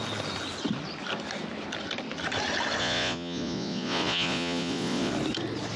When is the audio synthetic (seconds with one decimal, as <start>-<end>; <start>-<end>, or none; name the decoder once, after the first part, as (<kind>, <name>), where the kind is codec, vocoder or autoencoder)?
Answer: 2.8-5.1 (vocoder, Vocos)